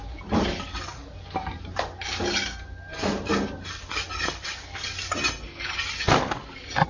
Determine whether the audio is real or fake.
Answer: real